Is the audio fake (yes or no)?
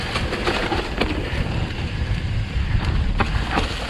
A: no